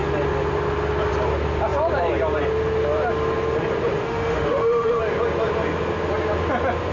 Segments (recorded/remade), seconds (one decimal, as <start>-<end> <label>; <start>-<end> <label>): 0.0-4.0 recorded; 4.0-5.0 remade; 5.0-6.9 recorded